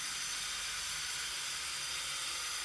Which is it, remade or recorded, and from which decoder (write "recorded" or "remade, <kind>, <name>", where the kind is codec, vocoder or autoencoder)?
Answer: recorded